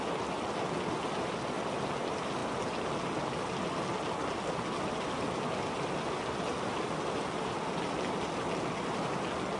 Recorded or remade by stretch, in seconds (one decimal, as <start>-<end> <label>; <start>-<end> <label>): 0.0-9.6 recorded